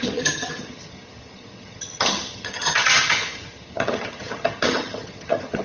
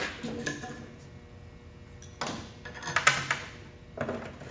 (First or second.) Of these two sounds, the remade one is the first